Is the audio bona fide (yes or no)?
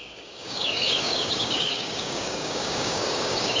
no